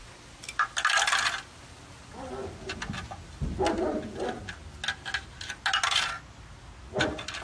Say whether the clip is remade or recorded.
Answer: recorded